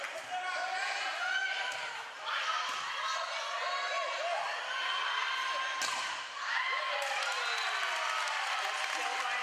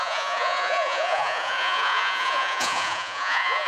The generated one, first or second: second